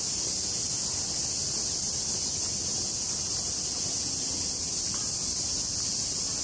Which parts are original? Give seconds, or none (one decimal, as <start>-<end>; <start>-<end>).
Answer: 0.0-6.4